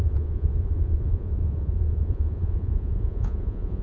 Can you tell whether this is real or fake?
fake